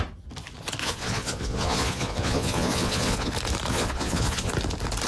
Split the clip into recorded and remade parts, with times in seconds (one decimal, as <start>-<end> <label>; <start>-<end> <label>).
0.0-0.8 recorded; 0.8-3.3 remade; 3.3-3.7 recorded; 3.7-4.5 remade; 4.5-5.1 recorded

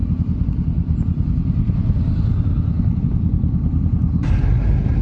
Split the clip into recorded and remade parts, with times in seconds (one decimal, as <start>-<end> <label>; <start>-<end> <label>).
0.0-5.0 recorded

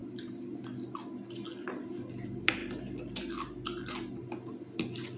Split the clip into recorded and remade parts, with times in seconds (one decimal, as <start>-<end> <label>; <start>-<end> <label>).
0.0-5.2 recorded

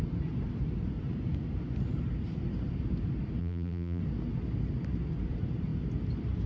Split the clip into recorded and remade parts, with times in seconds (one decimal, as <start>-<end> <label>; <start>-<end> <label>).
0.0-3.4 recorded; 3.4-4.0 remade; 4.0-6.5 recorded